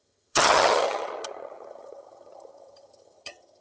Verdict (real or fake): fake